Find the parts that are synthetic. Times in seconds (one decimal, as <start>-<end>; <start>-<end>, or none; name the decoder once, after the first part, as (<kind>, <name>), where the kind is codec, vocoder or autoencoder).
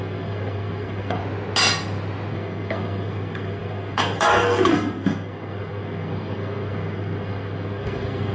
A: 0.0-1.2 (codec, SNAC); 2.3-8.3